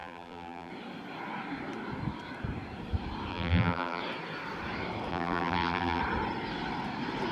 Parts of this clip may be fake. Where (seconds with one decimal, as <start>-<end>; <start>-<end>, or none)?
0.0-0.7; 3.3-4.0; 5.1-6.0